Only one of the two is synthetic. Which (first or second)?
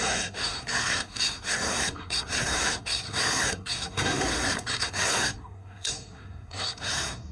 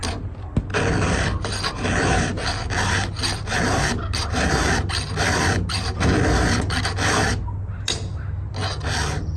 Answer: first